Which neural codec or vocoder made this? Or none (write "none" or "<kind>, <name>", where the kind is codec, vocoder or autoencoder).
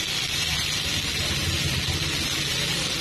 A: none